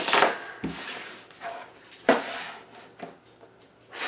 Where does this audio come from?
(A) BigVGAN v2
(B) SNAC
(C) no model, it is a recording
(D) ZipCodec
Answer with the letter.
C